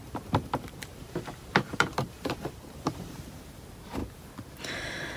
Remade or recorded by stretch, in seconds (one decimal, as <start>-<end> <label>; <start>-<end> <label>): 0.0-3.1 remade; 3.1-5.2 recorded